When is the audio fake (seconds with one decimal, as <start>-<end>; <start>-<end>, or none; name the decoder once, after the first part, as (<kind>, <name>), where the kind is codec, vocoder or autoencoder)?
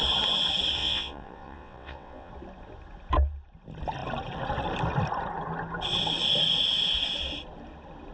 0.8-2.3 (vocoder, WaveNeXt)